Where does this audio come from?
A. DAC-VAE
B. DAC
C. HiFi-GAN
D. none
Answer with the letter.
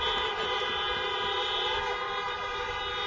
D